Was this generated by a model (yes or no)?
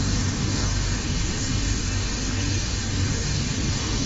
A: yes